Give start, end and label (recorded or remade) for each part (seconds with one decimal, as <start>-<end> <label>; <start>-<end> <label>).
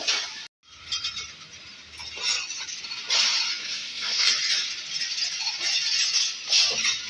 0.0-3.6 recorded; 3.6-4.3 remade; 4.3-7.1 recorded